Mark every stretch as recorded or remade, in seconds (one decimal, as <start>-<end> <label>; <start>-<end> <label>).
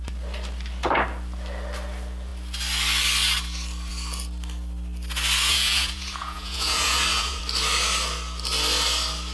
0.0-5.5 recorded; 5.5-7.4 remade; 7.4-9.3 recorded